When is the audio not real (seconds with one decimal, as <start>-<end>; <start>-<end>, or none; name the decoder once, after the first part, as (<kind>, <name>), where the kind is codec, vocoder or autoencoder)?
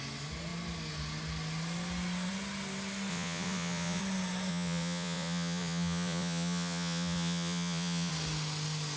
3.1-4.0 (vocoder, Vocos); 4.5-8.1